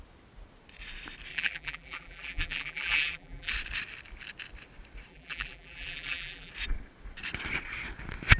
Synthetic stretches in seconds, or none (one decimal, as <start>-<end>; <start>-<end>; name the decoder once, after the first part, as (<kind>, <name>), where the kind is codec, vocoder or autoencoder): 1.3-3.5 (vocoder, BigVGAN v2); 5.1-6.5